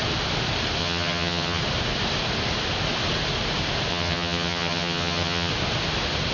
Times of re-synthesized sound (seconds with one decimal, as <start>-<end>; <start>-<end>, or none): 0.8-1.6; 3.9-5.5